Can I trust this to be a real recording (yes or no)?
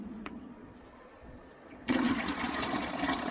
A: no